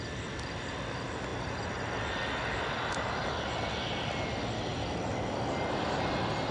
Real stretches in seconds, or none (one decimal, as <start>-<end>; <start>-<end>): 0.0-6.5